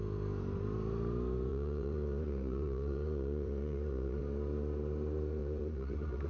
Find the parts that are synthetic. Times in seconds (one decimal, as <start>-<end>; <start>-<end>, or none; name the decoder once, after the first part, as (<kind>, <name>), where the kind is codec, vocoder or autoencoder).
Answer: 1.5-4.2 (vocoder, Vocos); 5.4-6.3